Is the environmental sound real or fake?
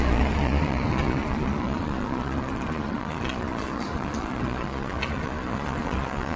fake